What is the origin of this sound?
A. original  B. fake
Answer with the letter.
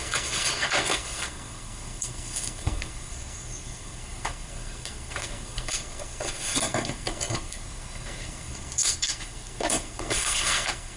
B